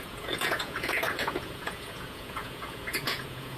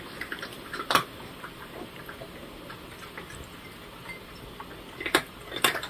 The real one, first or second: second